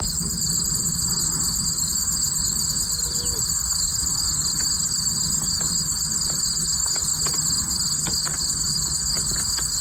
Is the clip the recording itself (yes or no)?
yes